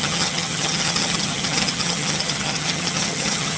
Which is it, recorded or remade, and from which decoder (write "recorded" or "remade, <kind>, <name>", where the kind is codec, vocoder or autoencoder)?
remade, vocoder, HiFi-GAN